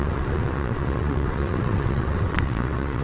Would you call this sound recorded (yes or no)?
no